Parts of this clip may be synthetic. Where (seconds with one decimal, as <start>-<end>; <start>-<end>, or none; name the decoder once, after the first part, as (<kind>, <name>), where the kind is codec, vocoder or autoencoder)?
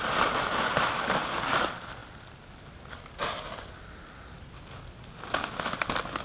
none